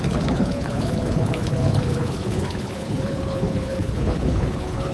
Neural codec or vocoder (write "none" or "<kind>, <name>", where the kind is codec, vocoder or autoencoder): codec, HILCodec